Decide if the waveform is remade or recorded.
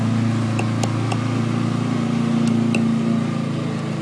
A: recorded